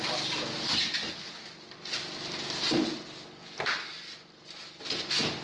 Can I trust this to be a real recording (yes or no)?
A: yes